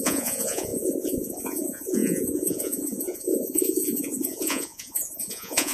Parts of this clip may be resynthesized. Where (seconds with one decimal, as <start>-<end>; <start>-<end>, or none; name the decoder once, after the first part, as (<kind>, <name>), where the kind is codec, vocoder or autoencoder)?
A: 0.0-5.7 (vocoder, Vocos)